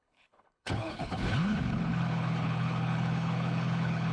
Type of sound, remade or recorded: remade